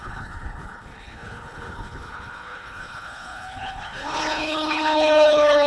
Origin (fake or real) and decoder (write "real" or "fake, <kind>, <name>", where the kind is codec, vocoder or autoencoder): fake, codec, HILCodec